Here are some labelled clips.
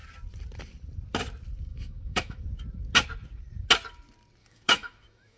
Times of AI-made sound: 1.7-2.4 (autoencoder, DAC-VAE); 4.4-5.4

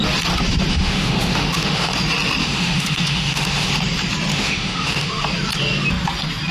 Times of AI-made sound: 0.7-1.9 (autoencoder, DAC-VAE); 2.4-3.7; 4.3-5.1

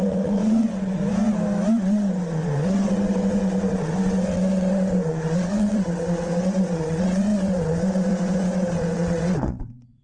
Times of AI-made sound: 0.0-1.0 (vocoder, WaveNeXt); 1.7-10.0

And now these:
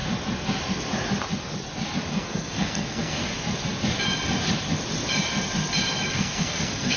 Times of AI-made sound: 2.1-3.2 (codec, SNAC); 6.1-7.0

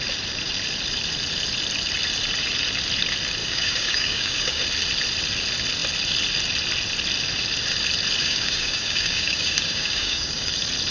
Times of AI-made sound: 3.4-4.6 (codec, DAC); 8.2-10.5

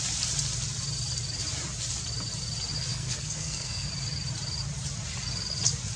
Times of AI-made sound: 2.9-3.9 (codec, SNAC)